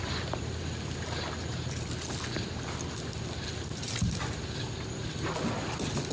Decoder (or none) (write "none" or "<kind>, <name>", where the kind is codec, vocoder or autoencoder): none